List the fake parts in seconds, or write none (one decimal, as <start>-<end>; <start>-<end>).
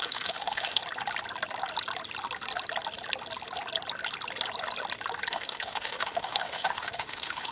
0.0-0.8; 5.3-7.5